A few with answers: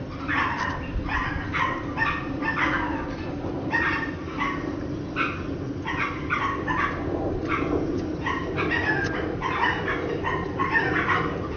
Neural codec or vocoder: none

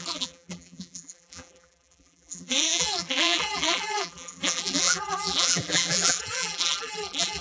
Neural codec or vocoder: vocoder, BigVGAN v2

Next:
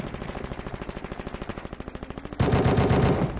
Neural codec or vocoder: none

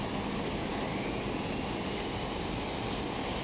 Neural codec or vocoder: none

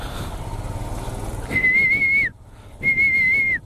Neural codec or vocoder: none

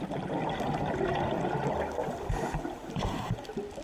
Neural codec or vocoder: none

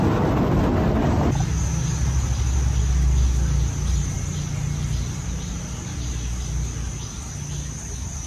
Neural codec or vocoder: none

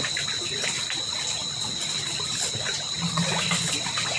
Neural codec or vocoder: none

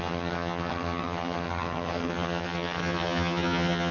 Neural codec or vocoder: vocoder, HiFi-GAN